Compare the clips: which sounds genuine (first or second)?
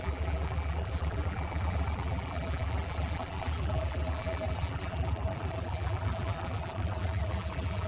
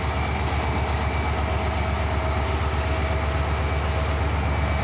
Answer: second